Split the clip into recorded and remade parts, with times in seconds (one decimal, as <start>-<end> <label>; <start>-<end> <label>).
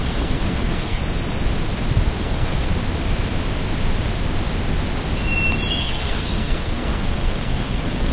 0.0-1.0 remade; 1.0-2.2 recorded; 2.2-2.7 remade; 2.7-5.8 recorded; 5.8-8.1 remade